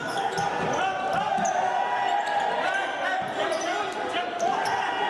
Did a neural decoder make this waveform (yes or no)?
no